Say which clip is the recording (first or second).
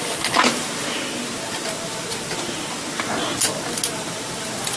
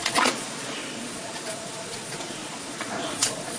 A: first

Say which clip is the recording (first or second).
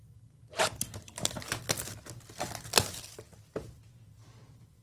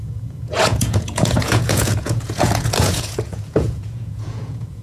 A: first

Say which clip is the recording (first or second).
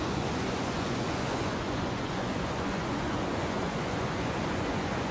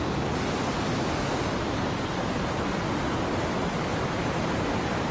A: second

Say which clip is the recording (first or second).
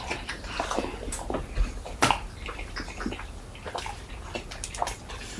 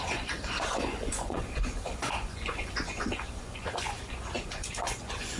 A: first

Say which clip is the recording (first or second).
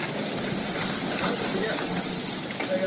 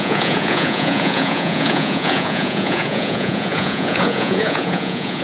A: first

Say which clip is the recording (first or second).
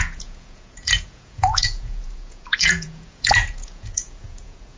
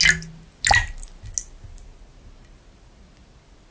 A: second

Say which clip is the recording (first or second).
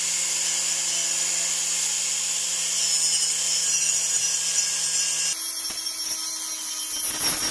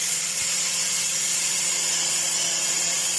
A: first